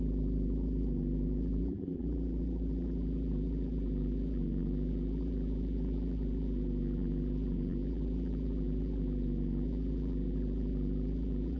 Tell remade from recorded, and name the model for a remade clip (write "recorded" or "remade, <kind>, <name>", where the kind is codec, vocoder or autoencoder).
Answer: remade, vocoder, BigVGAN v2